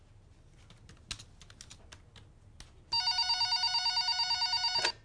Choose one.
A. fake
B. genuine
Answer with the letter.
B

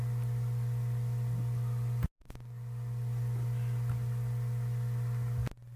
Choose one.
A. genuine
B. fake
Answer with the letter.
A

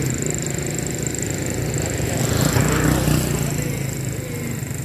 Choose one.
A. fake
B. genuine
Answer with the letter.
B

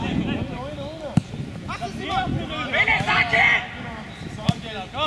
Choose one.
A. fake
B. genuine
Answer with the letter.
B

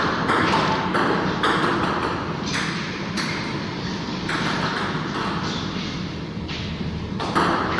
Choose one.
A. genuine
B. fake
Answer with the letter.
B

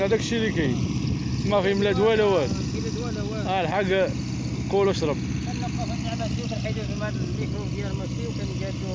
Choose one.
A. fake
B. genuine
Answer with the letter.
B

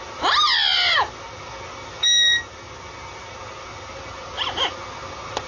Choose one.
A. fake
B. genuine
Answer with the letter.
B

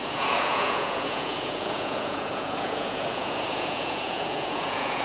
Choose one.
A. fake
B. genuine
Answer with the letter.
A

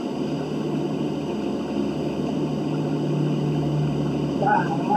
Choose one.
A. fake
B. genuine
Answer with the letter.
B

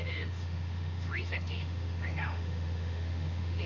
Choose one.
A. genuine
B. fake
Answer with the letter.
B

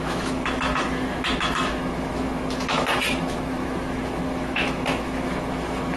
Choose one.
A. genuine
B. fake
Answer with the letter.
B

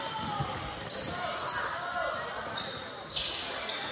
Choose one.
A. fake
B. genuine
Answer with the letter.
B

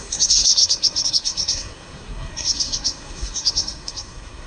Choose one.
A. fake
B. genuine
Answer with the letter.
A